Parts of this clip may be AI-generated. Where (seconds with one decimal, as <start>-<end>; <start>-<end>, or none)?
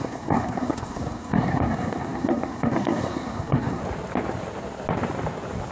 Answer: 0.0-3.8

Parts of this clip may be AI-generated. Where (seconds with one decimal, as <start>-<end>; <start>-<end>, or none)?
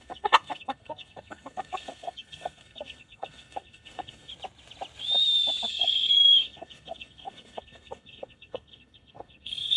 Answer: 0.0-4.3; 5.7-9.8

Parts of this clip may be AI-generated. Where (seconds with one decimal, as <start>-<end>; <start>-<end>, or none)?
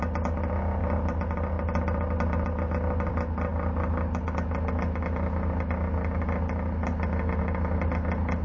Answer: none